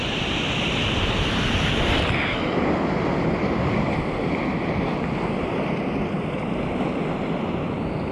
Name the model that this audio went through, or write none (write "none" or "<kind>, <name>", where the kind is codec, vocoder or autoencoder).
none